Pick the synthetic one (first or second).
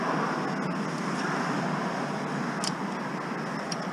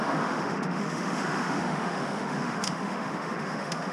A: second